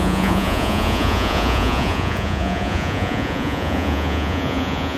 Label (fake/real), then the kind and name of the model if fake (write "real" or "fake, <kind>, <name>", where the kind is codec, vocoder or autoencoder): fake, vocoder, Vocos